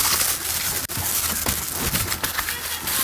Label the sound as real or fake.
real